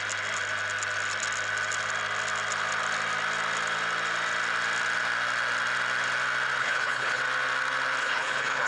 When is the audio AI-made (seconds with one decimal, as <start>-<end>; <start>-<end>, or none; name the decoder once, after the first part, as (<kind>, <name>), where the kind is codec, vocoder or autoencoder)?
6.6-7.2 (codec, HILCodec); 8.0-8.7